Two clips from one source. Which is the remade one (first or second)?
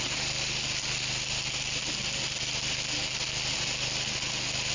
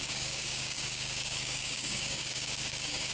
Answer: second